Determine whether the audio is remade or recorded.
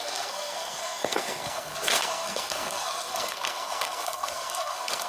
remade